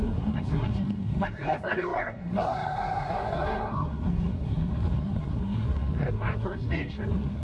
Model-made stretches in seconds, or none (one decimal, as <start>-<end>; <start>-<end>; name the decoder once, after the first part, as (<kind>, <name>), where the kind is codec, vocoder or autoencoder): 0.0-7.4 (codec, SNAC)